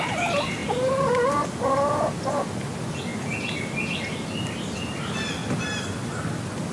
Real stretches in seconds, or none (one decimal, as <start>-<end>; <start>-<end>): 0.0-6.7